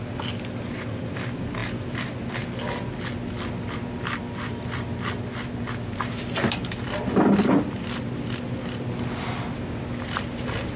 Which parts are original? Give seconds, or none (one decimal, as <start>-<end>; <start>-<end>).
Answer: 0.0-10.8